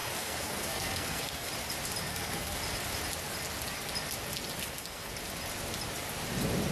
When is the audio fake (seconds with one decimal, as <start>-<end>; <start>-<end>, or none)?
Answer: 0.0-1.5; 2.1-2.6; 4.6-5.1